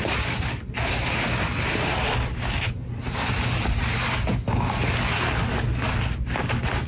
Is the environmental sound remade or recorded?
recorded